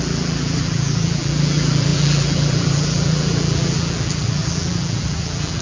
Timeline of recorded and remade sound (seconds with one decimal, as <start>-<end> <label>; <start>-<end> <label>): 0.0-5.6 remade